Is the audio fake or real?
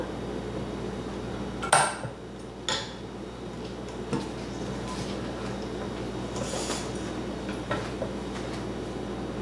real